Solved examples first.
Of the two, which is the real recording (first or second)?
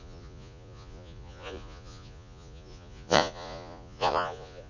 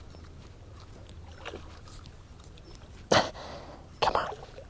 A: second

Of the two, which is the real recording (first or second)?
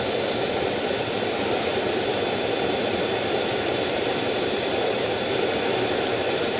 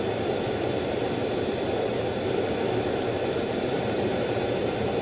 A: second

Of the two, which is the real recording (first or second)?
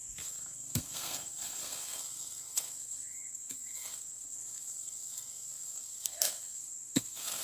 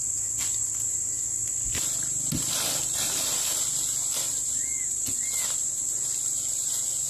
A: second